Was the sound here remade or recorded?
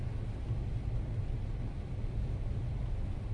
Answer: recorded